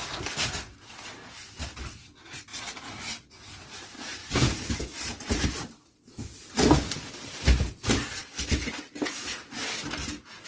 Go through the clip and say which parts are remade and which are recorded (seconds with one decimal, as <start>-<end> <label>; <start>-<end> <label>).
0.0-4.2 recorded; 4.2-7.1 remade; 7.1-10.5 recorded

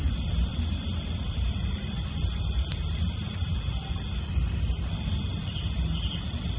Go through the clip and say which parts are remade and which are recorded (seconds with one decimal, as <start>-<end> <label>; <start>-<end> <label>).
0.0-0.5 recorded; 0.5-3.9 remade; 3.9-6.6 recorded

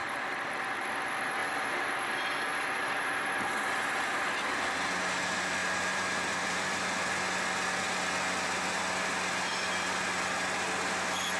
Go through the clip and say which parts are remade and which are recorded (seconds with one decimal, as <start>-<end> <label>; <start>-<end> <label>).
0.0-0.6 remade; 0.6-1.4 recorded; 1.4-2.3 remade; 2.3-5.6 recorded; 5.6-6.8 remade; 6.8-11.4 recorded

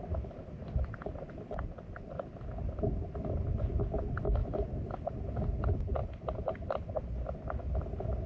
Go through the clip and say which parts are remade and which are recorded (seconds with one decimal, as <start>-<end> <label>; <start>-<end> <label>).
0.0-0.6 recorded; 0.6-3.4 remade; 3.4-4.4 recorded; 4.4-5.6 remade; 5.6-8.3 recorded